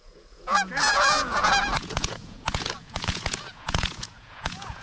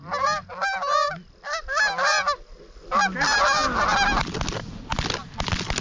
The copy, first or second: first